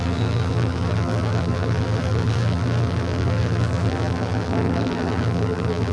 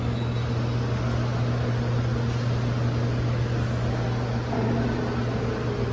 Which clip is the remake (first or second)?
first